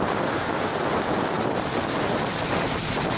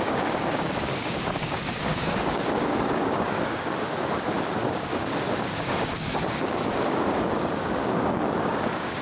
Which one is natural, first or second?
first